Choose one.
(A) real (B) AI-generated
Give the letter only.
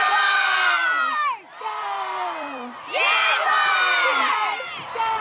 B